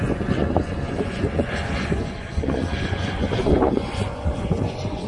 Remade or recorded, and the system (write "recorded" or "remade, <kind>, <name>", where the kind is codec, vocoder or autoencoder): remade, vocoder, Vocos